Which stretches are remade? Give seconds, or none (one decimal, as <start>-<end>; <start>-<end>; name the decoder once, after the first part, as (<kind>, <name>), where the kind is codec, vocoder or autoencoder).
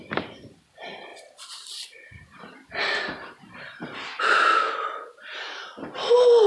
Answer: none